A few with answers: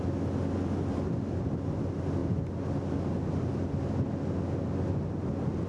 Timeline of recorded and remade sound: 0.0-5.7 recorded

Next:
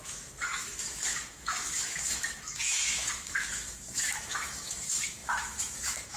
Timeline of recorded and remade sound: 0.0-6.2 remade